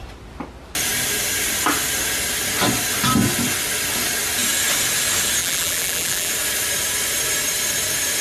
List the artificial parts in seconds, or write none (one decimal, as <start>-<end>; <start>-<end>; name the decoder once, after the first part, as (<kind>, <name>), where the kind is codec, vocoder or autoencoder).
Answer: 5.4-6.3 (vocoder, BigVGAN v2)